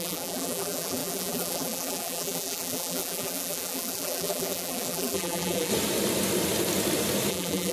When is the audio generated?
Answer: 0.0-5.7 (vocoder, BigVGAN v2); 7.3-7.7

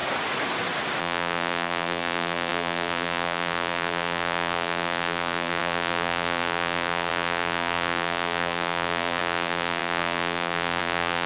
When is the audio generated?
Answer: 1.0-11.3 (vocoder, BigVGAN v2)

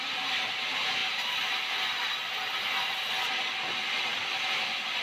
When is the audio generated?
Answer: 4.1-5.0 (vocoder, BigVGAN v2)

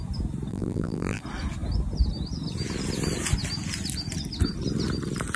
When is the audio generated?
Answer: 0.5-1.2 (vocoder, BigVGAN v2)

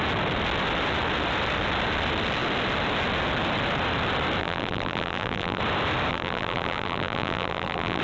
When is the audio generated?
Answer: 4.4-5.6 (vocoder, BigVGAN v2); 6.1-8.0

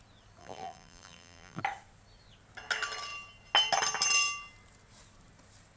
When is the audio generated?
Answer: 0.4-1.6 (vocoder, BigVGAN v2)

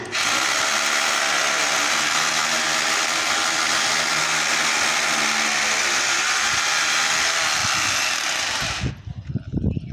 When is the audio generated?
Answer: none